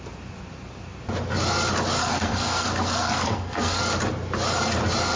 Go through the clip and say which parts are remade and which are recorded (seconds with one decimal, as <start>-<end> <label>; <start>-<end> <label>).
0.0-2.0 recorded; 2.0-3.8 remade; 3.8-5.2 recorded